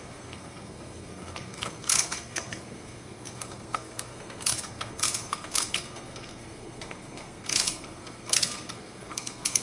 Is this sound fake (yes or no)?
yes